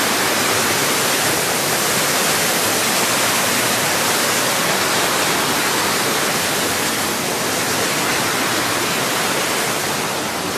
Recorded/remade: recorded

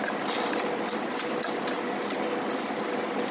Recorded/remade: recorded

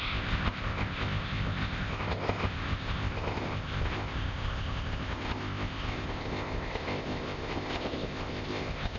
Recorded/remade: remade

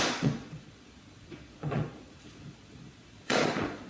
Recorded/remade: remade